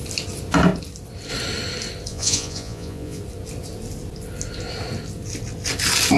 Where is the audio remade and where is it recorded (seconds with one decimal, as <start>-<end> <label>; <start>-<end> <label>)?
0.0-2.1 recorded; 2.1-3.2 remade; 3.2-6.2 recorded